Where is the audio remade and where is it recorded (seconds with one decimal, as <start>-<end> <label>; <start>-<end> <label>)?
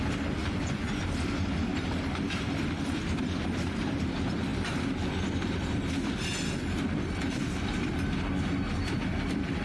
0.0-0.4 recorded; 0.4-1.0 remade; 1.0-9.6 recorded